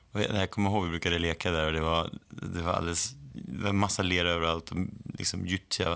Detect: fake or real real